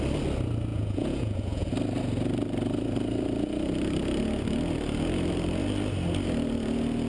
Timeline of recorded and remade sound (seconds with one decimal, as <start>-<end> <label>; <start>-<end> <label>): 0.0-0.7 recorded; 0.7-1.7 remade; 1.7-7.1 recorded